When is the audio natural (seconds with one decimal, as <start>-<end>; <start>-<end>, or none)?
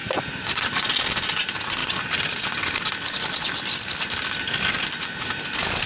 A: 0.0-5.9